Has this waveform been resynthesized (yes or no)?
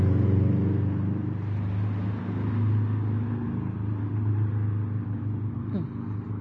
no